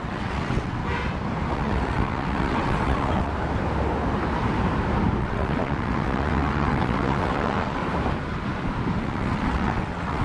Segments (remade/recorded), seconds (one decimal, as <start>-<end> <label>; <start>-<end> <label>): 0.0-0.8 remade; 0.8-1.5 recorded; 1.5-3.3 remade; 3.3-5.2 recorded; 5.2-7.8 remade; 7.8-9.0 recorded; 9.0-10.2 remade